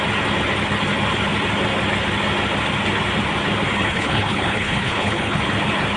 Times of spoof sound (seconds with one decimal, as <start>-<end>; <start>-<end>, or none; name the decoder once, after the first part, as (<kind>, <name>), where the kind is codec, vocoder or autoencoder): 3.7-5.4 (codec, HILCodec)